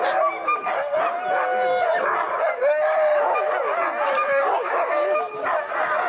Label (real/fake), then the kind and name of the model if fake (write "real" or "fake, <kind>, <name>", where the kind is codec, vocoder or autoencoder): real